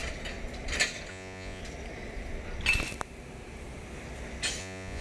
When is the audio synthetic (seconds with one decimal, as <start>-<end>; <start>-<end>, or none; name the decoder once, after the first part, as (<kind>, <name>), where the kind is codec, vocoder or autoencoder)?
1.1-1.6 (vocoder, Vocos); 4.6-5.0